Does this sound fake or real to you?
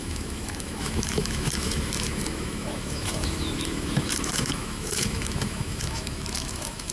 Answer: fake